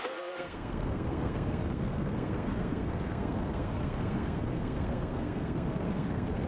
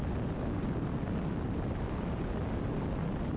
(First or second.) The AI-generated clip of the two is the first